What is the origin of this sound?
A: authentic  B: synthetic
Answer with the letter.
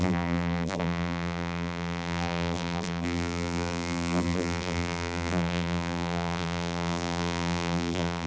B